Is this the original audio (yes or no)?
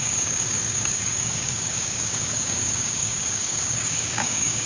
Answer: no